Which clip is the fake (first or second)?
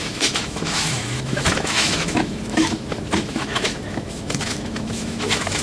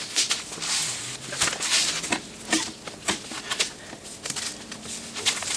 first